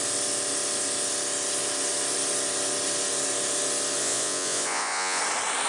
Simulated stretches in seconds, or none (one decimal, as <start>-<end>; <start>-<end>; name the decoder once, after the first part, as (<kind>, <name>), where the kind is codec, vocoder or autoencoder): 4.0-5.2 (vocoder, Vocos)